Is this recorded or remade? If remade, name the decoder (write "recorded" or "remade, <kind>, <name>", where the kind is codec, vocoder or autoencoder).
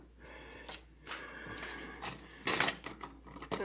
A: recorded